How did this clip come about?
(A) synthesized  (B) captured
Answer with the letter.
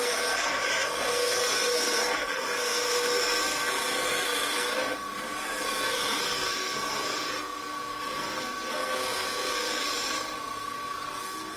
A